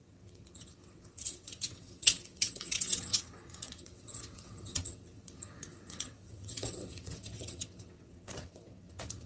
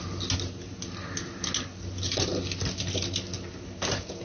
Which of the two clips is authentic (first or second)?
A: second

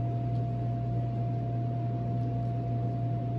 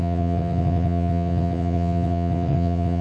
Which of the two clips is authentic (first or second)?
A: first